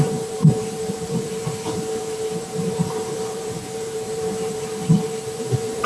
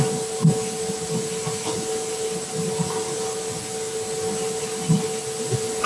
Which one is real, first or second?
second